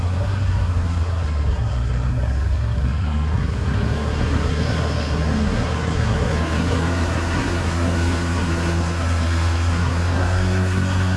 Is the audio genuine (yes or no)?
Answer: no